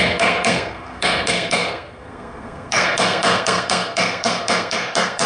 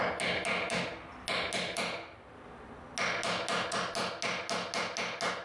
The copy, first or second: first